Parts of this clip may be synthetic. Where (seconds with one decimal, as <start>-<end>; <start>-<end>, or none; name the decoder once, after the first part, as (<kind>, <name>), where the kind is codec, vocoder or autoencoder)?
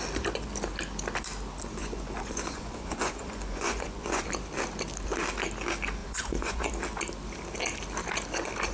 1.8-4.2 (vocoder, Vocos); 6.0-6.7